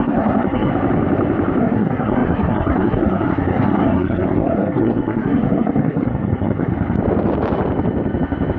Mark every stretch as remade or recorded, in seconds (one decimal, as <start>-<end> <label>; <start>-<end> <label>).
0.0-0.7 remade; 0.7-1.6 recorded; 1.6-6.7 remade; 6.7-8.6 recorded